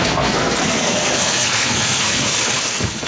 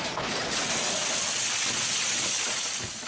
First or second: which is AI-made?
first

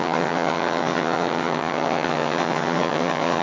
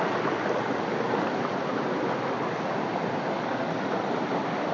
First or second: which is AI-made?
first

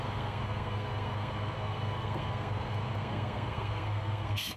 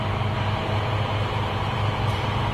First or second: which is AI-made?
first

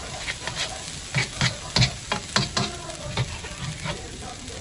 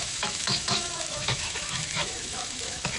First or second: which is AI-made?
second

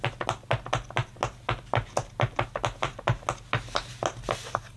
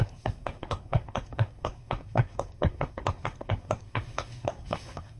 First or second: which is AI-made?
second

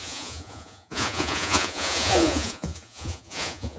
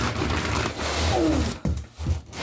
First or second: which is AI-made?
first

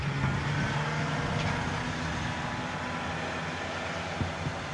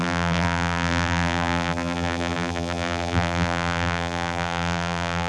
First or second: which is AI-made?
second